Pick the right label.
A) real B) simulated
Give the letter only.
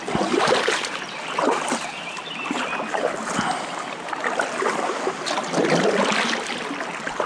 A